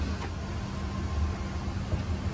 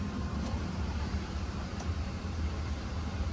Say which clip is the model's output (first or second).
second